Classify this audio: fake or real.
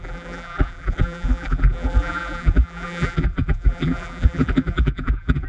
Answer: fake